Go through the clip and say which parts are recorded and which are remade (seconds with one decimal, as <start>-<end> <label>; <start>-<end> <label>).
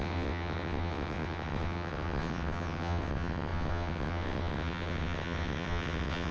0.0-6.3 remade